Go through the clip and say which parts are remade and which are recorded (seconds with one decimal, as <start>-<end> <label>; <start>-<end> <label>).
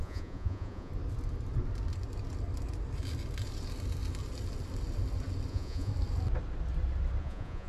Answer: 0.0-0.9 remade; 0.9-5.5 recorded; 5.5-5.9 remade; 5.9-7.2 recorded; 7.2-7.7 remade